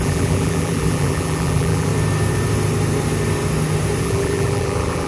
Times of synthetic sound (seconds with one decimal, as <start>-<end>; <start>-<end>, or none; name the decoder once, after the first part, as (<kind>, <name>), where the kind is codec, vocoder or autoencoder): 0.0-1.9 (vocoder, BigVGAN v2); 4.0-5.1